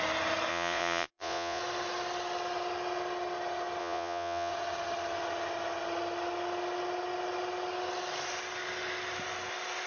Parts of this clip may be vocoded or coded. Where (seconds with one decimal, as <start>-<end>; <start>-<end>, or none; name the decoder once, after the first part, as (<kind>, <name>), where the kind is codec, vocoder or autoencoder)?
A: 0.5-1.6 (vocoder, Vocos); 3.8-4.5